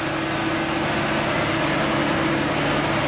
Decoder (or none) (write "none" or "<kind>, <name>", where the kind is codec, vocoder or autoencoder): none